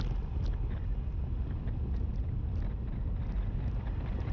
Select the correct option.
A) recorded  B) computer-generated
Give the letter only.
A